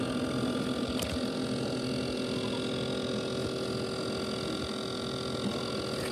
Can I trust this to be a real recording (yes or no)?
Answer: yes